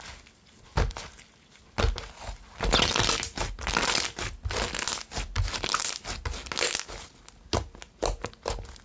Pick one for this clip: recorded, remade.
recorded